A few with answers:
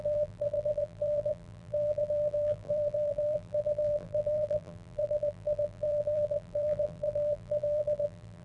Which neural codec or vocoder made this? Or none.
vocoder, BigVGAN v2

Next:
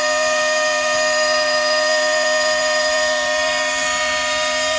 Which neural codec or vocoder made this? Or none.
vocoder, BigVGAN v2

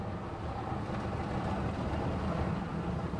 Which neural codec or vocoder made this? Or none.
none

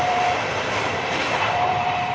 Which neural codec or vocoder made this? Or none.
vocoder, BigVGAN v2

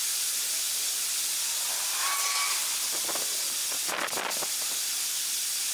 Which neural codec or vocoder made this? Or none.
none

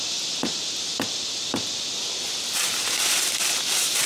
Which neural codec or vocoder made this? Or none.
none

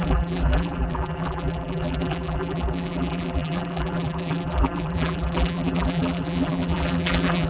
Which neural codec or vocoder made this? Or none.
vocoder, BigVGAN v2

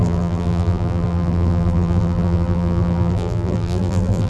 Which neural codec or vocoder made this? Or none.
vocoder, BigVGAN v2